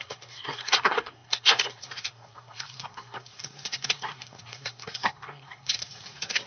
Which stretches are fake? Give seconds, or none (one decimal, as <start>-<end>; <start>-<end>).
0.0-6.5